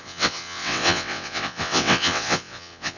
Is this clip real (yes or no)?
no